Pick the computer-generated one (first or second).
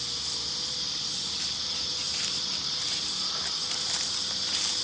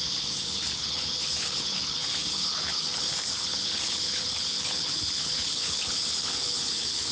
second